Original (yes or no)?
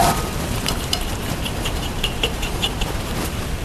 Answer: no